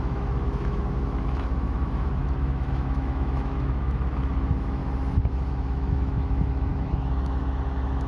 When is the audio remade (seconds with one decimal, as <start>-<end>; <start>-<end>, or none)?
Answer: 0.0-4.8; 5.3-8.1